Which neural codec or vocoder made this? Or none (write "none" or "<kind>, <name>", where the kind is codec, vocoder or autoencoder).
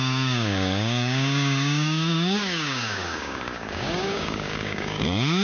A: codec, DAC